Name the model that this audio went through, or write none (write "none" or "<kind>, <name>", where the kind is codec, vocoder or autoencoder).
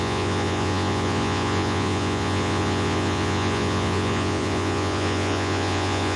vocoder, Vocos